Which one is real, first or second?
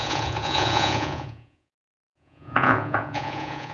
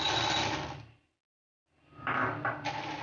second